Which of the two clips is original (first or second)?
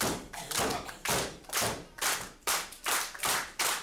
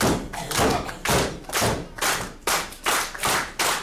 second